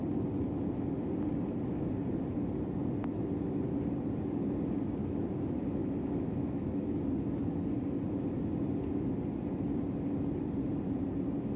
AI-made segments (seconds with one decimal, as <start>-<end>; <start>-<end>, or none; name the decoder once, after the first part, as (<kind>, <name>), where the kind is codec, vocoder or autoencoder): 5.0-7.0 (autoencoder, DAC-VAE)